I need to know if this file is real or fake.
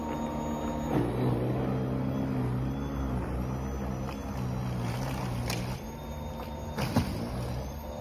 real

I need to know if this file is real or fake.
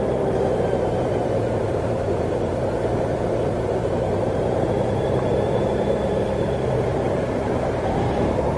fake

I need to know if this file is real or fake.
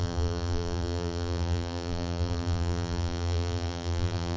fake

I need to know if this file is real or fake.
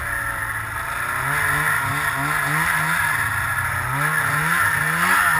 real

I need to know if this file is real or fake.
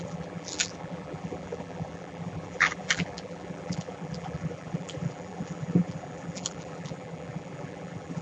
fake